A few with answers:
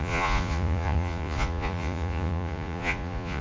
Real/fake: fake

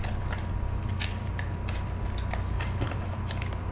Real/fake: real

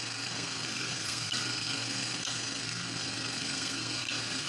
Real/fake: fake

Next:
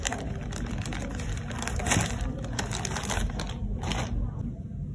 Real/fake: real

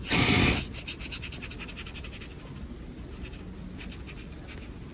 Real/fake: real